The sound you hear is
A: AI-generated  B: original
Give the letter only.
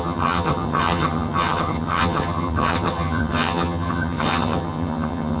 A